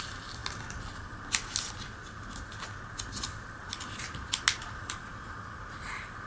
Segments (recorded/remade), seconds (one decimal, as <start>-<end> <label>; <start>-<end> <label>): 0.0-6.3 recorded